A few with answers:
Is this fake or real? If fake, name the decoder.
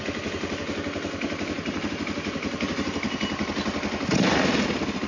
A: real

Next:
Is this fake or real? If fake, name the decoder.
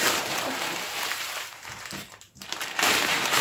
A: fake, vocoder, BigVGAN v2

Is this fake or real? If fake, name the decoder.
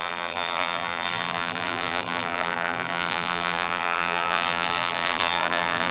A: fake, vocoder, BigVGAN v2